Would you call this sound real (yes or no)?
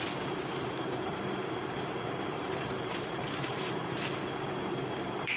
no